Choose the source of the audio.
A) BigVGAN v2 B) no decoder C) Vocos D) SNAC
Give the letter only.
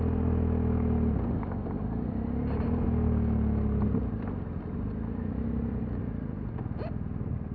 B